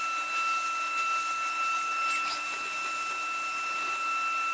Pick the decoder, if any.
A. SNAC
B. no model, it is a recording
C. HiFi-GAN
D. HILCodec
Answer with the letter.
B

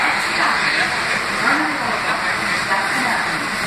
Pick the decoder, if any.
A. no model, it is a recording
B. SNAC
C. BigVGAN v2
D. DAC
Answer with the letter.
C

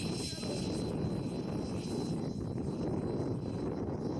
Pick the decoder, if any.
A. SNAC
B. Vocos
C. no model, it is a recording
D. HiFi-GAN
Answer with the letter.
C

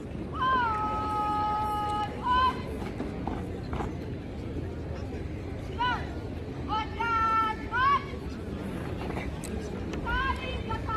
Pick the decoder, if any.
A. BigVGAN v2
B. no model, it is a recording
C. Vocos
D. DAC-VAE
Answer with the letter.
B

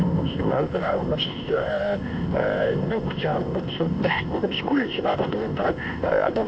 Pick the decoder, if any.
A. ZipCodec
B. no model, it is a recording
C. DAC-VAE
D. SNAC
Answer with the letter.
A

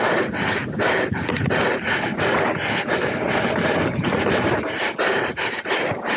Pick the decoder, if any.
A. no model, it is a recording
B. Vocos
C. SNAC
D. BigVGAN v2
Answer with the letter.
A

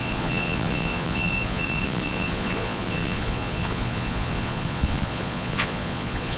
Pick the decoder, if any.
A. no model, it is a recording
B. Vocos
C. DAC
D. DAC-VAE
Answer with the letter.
B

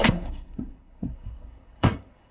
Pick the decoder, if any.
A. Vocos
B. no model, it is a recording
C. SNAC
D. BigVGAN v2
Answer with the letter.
C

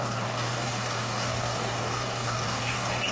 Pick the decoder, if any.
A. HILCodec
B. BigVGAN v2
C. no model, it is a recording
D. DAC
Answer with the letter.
D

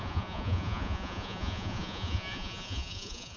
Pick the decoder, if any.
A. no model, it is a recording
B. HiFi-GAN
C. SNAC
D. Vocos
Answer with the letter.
D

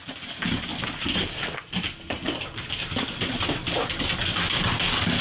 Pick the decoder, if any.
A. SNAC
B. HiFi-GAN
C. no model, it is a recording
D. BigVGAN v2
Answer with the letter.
C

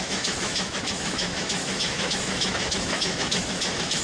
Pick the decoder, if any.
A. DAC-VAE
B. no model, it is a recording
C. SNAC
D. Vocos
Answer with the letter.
A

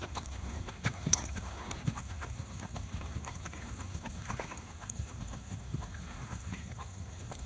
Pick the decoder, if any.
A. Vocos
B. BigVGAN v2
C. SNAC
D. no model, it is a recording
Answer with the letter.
C